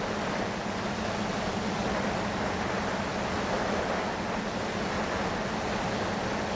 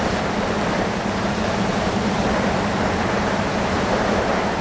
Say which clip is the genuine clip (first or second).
first